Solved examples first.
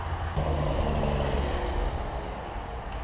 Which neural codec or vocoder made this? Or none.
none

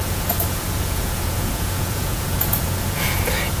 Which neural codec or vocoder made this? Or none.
vocoder, Vocos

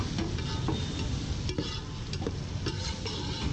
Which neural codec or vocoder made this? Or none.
none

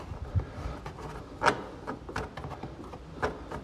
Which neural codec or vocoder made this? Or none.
none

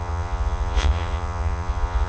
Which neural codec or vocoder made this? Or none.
vocoder, Vocos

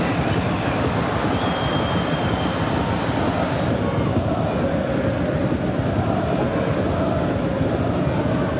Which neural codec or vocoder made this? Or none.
none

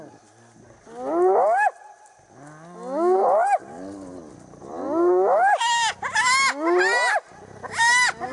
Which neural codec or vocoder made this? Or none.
none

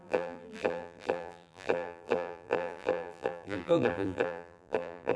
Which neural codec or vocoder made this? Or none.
vocoder, BigVGAN v2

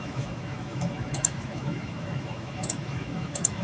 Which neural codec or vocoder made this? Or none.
autoencoder, DAC-VAE